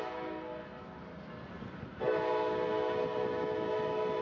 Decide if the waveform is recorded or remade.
recorded